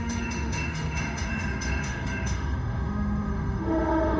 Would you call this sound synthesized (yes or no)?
yes